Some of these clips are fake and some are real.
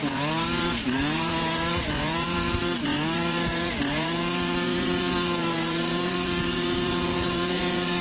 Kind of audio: fake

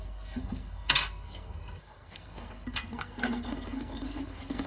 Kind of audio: fake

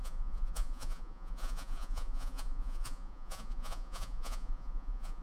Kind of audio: fake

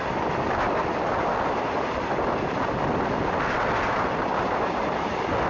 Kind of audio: real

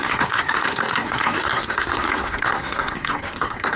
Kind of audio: fake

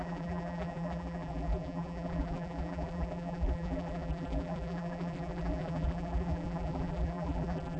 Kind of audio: fake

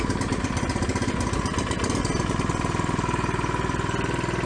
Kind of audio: real